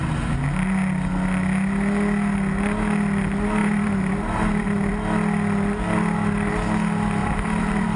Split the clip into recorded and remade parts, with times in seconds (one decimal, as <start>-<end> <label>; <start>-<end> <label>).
0.0-3.6 recorded; 3.6-4.9 remade; 4.9-7.2 recorded; 7.2-8.0 remade